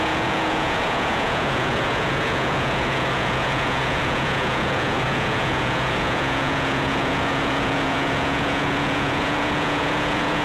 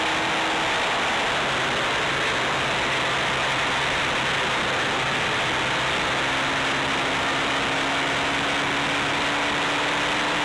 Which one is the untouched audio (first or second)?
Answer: second